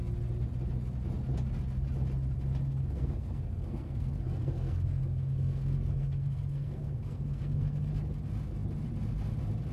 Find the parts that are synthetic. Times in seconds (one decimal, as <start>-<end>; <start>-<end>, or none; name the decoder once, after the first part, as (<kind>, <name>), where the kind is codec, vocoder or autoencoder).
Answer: 2.7-7.9 (codec, SNAC)